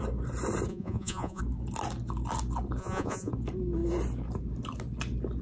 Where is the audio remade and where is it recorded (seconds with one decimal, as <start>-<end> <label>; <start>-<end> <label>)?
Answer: 0.0-0.7 recorded; 0.7-1.4 remade; 1.4-2.8 recorded; 2.8-3.3 remade; 3.3-5.4 recorded